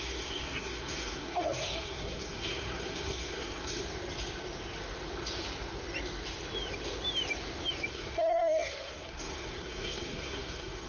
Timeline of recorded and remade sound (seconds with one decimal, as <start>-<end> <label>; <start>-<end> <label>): 0.0-3.8 remade; 3.8-7.9 recorded; 7.9-10.9 remade